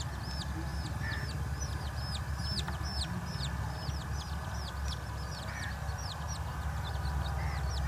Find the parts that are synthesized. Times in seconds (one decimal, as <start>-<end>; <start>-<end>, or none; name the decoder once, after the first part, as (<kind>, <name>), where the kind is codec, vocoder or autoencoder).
none